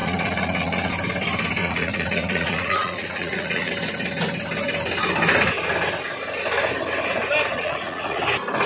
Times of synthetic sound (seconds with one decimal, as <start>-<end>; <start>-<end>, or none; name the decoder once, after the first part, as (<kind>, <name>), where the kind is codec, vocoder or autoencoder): 0.0-0.9 (vocoder, Vocos); 1.6-3.7; 7.5-8.2